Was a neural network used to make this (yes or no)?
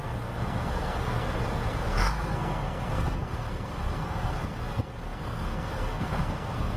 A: yes